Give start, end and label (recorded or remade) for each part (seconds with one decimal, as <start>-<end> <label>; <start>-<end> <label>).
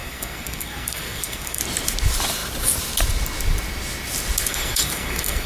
0.0-1.6 remade; 1.6-4.5 recorded; 4.5-5.5 remade